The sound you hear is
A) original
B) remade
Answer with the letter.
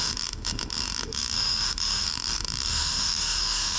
B